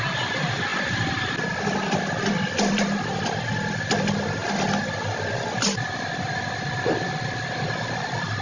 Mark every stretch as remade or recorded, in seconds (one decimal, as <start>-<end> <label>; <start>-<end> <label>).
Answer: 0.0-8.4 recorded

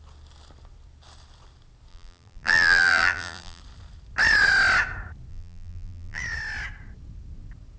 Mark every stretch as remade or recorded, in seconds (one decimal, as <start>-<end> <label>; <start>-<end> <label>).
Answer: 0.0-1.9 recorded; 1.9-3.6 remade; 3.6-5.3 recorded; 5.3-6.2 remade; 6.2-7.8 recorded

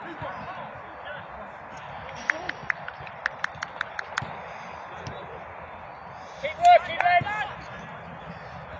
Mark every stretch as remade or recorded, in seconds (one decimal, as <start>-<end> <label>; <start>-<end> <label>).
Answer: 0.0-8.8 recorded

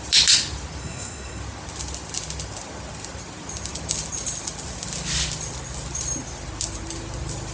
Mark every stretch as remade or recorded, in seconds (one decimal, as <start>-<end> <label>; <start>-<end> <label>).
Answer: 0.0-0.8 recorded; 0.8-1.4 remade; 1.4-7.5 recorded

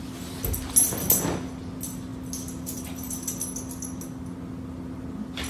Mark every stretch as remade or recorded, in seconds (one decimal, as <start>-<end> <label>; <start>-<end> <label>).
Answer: 0.0-5.5 recorded

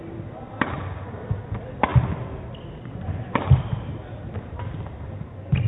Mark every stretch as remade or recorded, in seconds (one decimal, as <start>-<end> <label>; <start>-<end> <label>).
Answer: 0.0-5.7 recorded

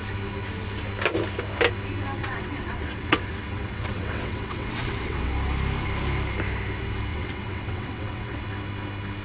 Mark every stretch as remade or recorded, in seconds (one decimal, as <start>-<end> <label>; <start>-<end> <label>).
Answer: 0.0-2.2 recorded; 2.2-5.3 remade; 5.3-7.1 recorded; 7.1-8.4 remade; 8.4-9.2 recorded

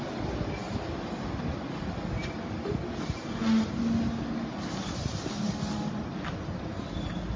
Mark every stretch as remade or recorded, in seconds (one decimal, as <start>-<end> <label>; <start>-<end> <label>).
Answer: 0.0-7.4 recorded